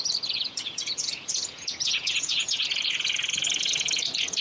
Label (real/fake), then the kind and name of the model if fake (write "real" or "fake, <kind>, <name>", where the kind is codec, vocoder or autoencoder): fake, vocoder, Vocos